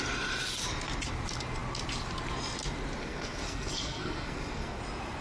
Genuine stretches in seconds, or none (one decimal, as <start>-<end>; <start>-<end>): 0.0-3.0; 4.8-5.2